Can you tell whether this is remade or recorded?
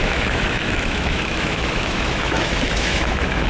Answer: remade